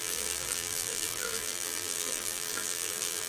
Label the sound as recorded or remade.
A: remade